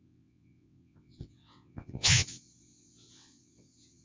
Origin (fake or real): fake